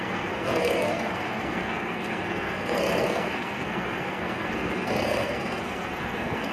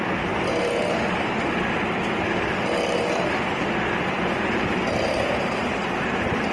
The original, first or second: second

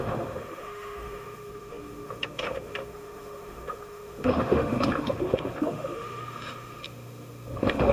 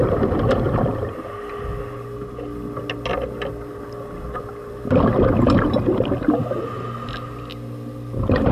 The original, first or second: second